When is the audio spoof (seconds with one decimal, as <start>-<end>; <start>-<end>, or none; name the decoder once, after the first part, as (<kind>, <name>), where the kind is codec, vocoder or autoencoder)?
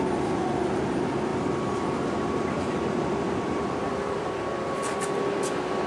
1.3-4.8 (vocoder, BigVGAN v2)